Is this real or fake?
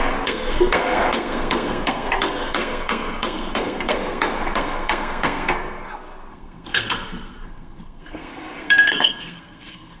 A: fake